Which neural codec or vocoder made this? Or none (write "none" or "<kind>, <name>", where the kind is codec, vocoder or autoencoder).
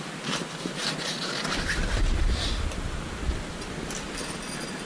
none